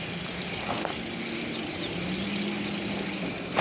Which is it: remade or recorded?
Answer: recorded